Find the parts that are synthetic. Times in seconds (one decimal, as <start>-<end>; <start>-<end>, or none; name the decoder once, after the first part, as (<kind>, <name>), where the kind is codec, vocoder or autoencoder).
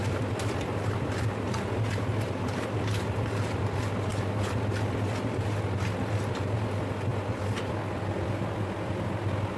0.0-3.6 (vocoder, BigVGAN v2); 7.1-9.1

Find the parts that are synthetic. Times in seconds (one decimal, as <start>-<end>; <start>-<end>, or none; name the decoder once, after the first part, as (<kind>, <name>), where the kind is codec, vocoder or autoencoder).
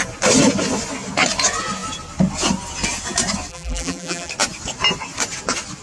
3.5-4.3 (vocoder, BigVGAN v2)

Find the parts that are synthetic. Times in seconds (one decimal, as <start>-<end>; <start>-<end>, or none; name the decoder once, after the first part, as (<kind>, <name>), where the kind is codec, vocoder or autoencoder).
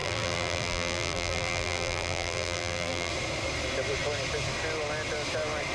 0.0-3.1 (vocoder, BigVGAN v2)